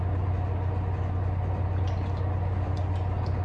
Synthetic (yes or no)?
no